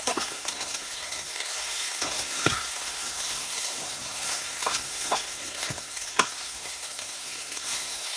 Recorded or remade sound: remade